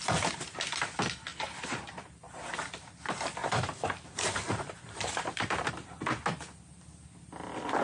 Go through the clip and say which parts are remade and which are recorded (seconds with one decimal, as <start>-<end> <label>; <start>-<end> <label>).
0.0-1.3 recorded; 1.3-2.5 remade; 2.5-3.4 recorded; 3.4-5.7 remade; 5.7-7.8 recorded